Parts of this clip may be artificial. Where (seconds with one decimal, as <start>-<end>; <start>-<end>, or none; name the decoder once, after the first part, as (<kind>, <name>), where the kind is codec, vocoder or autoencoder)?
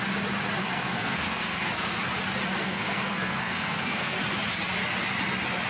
0.6-2.0 (codec, SNAC); 2.6-4.2